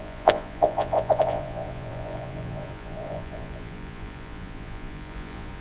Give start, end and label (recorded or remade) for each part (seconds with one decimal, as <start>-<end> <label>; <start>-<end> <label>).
0.0-5.6 remade